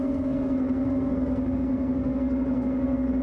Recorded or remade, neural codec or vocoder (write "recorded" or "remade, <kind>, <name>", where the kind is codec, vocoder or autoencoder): remade, codec, SNAC